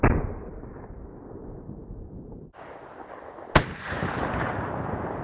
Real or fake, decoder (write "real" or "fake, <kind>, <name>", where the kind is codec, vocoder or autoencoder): real